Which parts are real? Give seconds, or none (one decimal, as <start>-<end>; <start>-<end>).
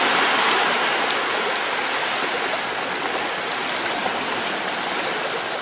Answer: 0.0-5.6